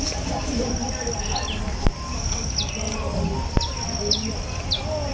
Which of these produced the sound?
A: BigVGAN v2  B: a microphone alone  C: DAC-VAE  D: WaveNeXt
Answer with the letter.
B